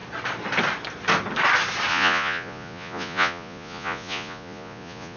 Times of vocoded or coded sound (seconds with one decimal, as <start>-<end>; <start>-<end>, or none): 1.9-5.2